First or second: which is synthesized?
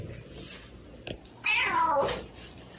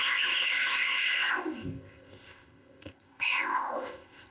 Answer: second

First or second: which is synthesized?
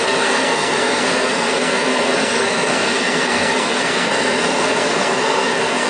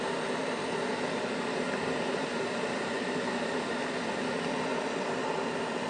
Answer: first